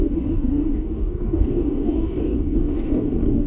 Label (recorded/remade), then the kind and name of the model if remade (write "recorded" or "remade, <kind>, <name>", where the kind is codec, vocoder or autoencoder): remade, codec, DAC